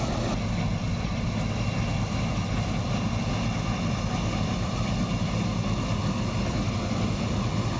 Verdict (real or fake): real